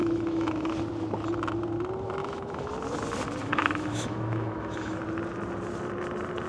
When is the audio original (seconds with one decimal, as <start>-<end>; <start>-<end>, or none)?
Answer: 0.7-2.2; 2.7-3.4; 5.0-6.5